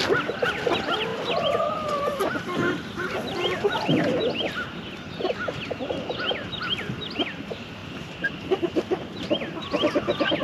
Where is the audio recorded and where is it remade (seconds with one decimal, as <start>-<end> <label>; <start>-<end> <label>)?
0.0-10.4 recorded